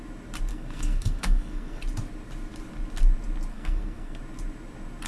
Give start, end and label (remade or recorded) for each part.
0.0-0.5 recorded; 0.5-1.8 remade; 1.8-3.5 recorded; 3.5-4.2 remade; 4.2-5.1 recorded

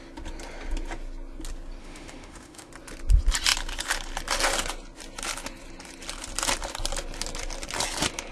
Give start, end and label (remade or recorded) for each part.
0.0-1.8 recorded; 1.8-2.7 remade; 2.7-8.3 recorded

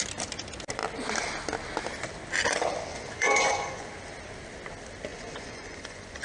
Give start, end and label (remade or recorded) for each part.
0.0-2.9 recorded; 2.9-3.9 remade; 3.9-5.1 recorded; 5.1-6.2 remade